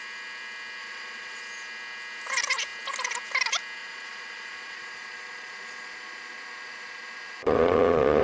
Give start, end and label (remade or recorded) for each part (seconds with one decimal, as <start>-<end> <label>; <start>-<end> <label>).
0.0-0.8 recorded; 0.8-1.4 remade; 1.4-3.8 recorded; 3.8-8.2 remade